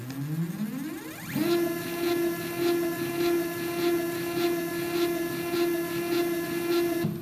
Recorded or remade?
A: recorded